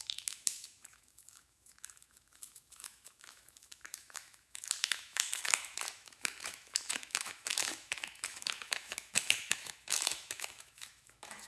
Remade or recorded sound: remade